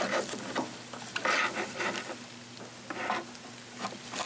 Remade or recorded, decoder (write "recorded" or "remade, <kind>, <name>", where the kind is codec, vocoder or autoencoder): recorded